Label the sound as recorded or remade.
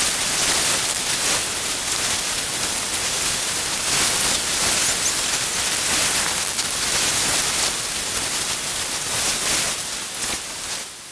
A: recorded